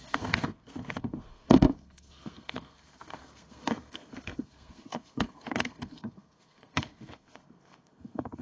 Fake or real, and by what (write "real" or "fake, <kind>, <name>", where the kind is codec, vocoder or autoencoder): fake, codec, SNAC